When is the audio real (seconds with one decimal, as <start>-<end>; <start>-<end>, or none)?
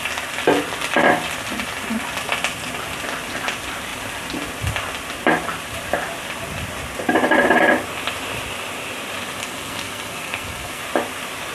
0.0-9.4; 10.8-11.5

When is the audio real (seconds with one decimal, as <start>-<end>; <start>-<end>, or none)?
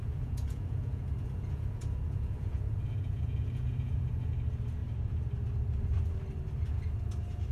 4.3-7.5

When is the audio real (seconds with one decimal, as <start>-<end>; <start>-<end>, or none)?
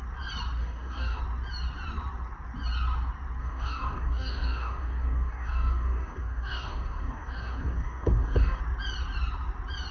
0.0-0.6; 1.2-3.4; 8.6-9.9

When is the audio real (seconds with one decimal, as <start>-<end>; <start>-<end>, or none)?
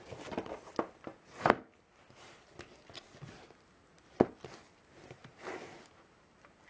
0.0-6.7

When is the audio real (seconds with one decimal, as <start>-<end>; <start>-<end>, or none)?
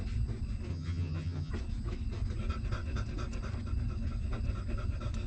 0.0-0.7; 1.5-5.3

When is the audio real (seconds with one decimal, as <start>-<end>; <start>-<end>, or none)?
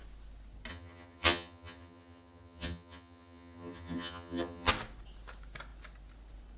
0.0-0.7; 4.7-6.6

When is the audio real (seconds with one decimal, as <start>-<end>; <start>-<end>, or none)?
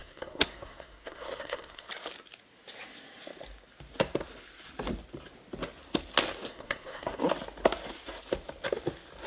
1.9-6.5; 7.2-9.3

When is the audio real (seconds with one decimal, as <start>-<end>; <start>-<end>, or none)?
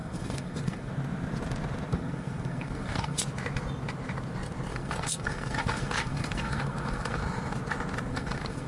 0.9-1.9; 3.2-4.7; 7.2-8.1